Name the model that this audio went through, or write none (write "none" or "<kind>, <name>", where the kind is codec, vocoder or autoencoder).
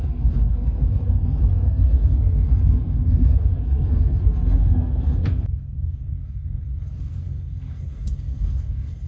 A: codec, SNAC